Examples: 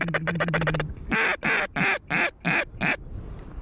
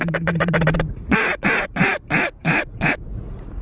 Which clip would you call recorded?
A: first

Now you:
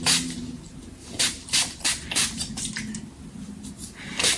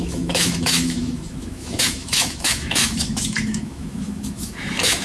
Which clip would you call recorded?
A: first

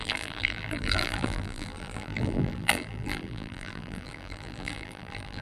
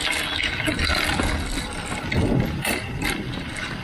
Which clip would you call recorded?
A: second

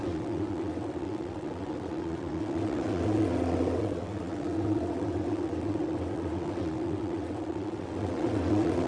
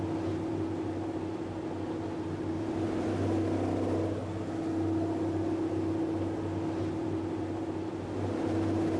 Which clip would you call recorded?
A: second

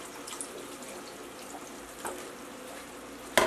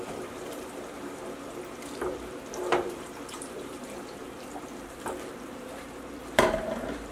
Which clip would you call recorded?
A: first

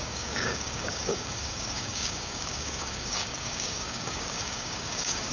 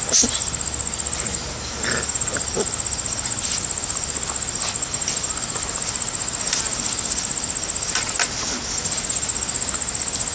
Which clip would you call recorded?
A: second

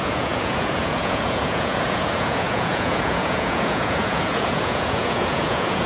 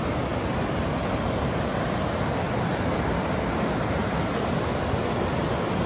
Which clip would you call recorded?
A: second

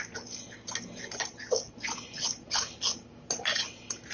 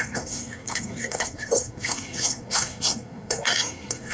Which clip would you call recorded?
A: first